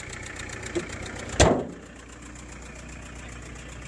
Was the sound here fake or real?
real